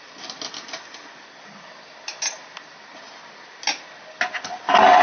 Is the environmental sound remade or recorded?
recorded